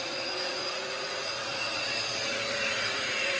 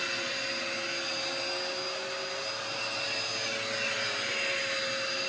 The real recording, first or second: second